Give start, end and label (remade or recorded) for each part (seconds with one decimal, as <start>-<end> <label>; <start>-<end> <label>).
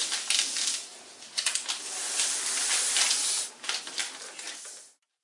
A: 0.0-5.2 recorded